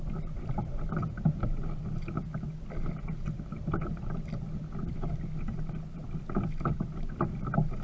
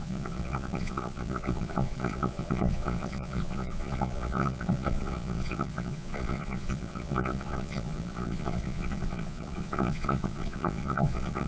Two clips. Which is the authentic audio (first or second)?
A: first